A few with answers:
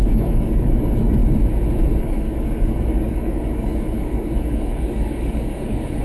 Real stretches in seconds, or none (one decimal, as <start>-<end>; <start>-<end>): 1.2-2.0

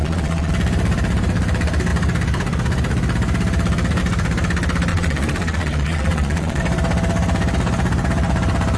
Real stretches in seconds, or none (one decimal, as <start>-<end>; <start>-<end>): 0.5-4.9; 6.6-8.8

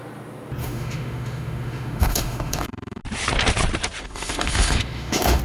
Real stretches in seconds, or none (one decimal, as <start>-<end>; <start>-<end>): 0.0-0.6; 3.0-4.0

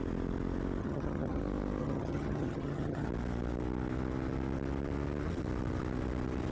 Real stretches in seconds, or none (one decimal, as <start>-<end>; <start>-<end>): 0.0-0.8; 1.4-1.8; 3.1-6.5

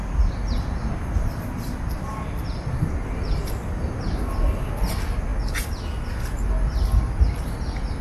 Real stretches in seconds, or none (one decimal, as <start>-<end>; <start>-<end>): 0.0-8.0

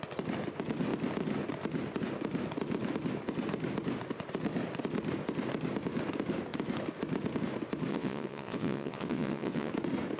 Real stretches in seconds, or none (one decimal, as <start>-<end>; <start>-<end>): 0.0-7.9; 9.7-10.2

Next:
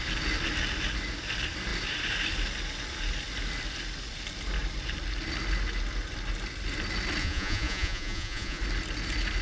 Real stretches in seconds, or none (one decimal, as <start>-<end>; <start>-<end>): 0.0-7.2; 8.6-9.4

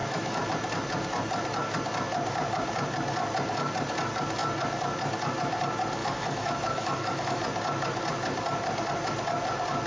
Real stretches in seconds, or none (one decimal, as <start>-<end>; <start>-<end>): 0.5-6.0; 7.4-9.9